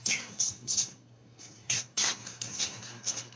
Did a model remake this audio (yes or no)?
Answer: yes